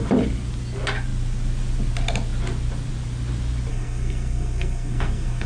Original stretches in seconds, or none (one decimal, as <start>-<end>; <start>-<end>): 0.0-3.7